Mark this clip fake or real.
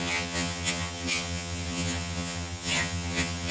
fake